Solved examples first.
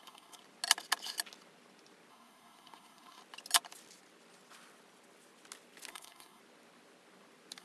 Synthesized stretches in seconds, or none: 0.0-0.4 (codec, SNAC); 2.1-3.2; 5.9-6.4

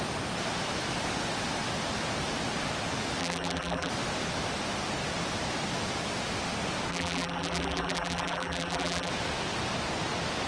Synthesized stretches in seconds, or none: 3.2-3.9 (vocoder, BigVGAN v2); 6.9-9.1